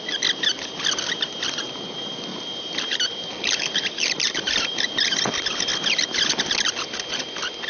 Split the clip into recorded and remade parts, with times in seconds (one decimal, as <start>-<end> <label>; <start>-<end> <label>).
0.0-2.3 recorded; 2.3-4.9 remade; 4.9-7.7 recorded